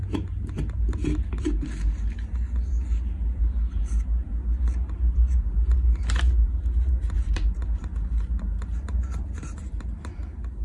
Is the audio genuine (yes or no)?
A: no